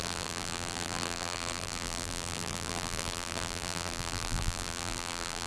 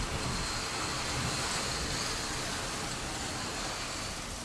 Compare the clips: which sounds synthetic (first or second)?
first